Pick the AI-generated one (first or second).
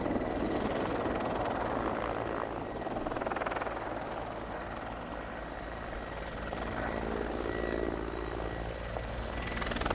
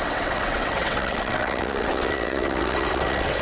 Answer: second